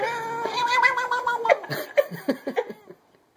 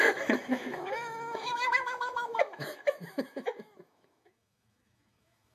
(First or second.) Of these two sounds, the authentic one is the first